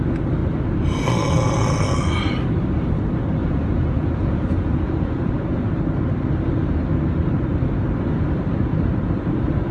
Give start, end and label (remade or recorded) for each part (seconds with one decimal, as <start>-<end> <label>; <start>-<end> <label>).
0.0-3.4 recorded; 3.4-5.3 remade; 5.3-9.7 recorded